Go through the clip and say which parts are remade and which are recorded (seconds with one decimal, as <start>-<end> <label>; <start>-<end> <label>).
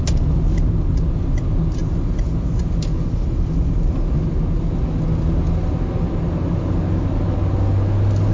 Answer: 0.0-8.3 recorded